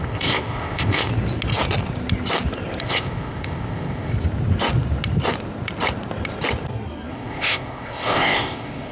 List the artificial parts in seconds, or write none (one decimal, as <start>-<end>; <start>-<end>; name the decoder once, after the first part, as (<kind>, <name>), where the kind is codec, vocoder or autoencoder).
0.0-1.1 (codec, ZipCodec); 2.8-4.1; 7.1-8.9